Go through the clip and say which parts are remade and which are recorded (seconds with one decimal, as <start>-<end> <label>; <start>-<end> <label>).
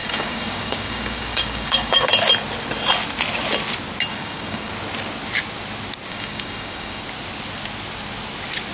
0.0-2.1 remade; 2.1-4.1 recorded; 4.1-4.7 remade; 4.7-6.1 recorded; 6.1-7.0 remade; 7.0-8.7 recorded